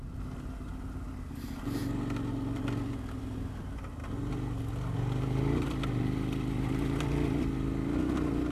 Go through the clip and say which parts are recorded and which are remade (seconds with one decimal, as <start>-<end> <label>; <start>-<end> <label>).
0.0-8.5 recorded